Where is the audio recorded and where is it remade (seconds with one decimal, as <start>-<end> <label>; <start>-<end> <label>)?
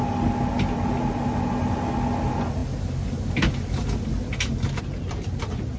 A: 0.0-5.8 recorded